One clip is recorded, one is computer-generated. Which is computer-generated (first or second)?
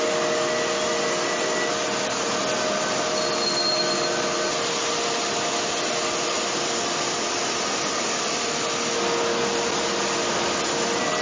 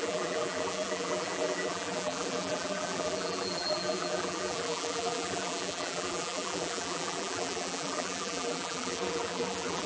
second